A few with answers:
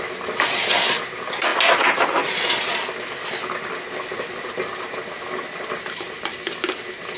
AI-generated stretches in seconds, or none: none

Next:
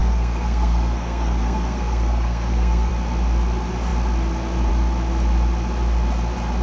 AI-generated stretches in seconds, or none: 0.0-2.9 (codec, SNAC)

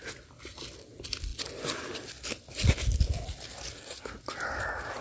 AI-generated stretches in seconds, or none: none

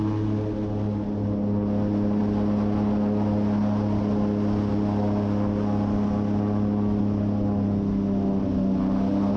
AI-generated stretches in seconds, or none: none

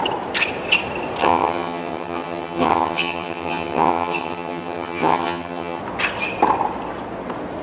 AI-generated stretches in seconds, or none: 1.2-5.8 (vocoder, HiFi-GAN)

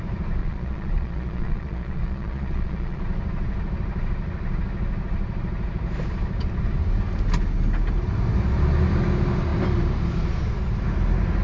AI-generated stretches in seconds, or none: 0.4-3.0 (vocoder, Vocos)

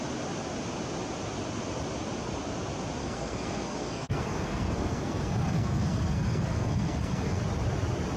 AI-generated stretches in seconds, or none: 3.0-7.4 (codec, SNAC)